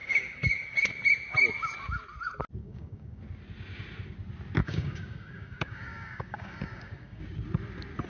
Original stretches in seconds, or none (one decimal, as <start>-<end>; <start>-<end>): 0.9-2.6; 3.2-4.6; 7.2-8.1